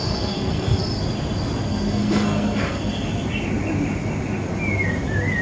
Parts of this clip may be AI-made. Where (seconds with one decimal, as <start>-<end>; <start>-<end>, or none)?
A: 0.0-0.8; 1.7-3.1

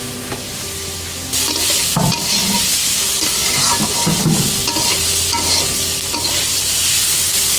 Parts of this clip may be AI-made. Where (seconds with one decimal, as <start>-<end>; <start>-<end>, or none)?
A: none

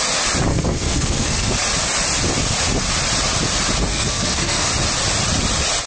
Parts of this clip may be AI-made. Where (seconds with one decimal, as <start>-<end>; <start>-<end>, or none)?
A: 0.5-1.5; 3.9-4.7

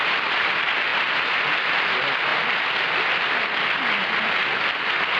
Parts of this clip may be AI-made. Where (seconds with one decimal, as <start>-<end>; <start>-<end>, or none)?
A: none

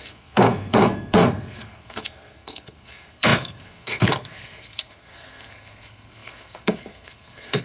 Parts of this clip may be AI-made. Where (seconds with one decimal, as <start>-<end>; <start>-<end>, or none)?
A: 0.0-7.6

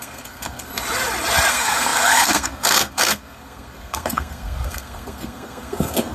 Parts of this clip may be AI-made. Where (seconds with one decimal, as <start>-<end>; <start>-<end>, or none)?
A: 0.0-0.7; 1.5-6.1

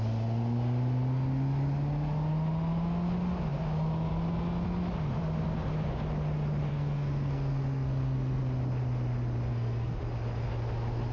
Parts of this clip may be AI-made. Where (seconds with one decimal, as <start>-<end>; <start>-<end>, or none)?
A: 6.7-8.4; 9.5-10.0